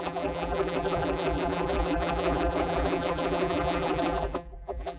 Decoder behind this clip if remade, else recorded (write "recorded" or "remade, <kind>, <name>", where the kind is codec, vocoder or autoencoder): remade, vocoder, BigVGAN v2